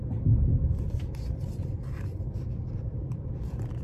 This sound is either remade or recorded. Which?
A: remade